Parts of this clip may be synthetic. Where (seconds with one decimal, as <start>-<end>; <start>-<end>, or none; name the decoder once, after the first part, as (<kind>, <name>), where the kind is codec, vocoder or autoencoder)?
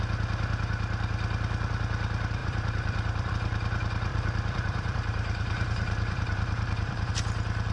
2.4-3.3 (vocoder, BigVGAN v2); 4.1-7.1